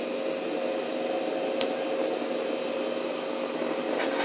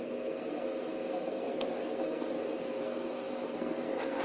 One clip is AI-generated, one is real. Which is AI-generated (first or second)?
second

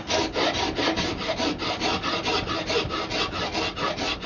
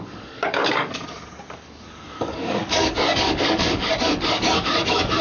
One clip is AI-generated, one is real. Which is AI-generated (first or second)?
second